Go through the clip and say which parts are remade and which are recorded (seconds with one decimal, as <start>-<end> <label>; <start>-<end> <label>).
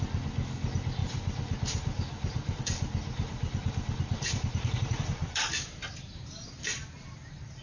0.0-1.0 recorded; 1.0-2.6 remade; 2.6-3.0 recorded; 3.0-6.0 remade; 6.0-7.6 recorded